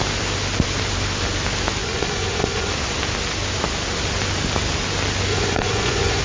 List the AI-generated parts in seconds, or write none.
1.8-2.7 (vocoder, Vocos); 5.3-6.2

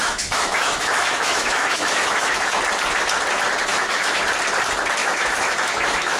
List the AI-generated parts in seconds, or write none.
0.0-2.6 (autoencoder, DAC-VAE); 3.7-4.2; 5.0-6.2

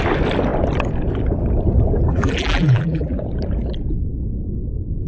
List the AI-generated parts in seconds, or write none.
2.1-3.2 (vocoder, BigVGAN v2)